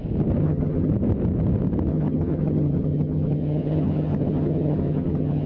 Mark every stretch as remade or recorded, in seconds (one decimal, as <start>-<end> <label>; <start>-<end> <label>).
0.0-0.4 recorded; 0.4-0.9 remade; 0.9-1.9 recorded; 1.9-5.5 remade